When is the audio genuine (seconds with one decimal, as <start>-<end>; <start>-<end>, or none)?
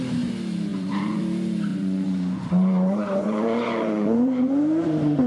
0.0-0.7; 1.2-1.7; 4.6-5.3